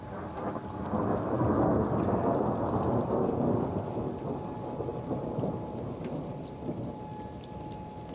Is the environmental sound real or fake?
real